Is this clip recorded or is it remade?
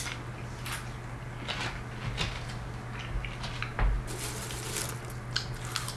recorded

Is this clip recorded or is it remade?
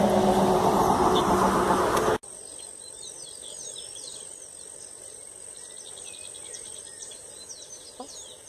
recorded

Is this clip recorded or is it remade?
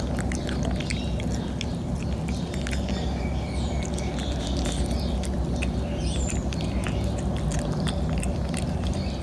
recorded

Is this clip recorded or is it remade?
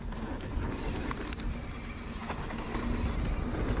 recorded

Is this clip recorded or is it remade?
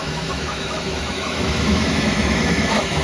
remade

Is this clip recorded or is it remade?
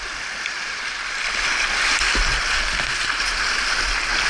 recorded